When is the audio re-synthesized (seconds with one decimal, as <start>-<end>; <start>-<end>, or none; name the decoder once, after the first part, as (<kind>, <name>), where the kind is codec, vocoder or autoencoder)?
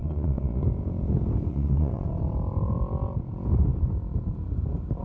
0.0-0.6 (vocoder, Vocos); 1.5-2.1